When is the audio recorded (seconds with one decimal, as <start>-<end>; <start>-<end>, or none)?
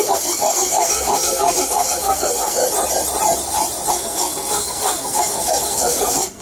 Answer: 2.6-3.9